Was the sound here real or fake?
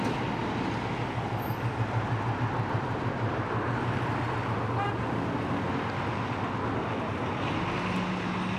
real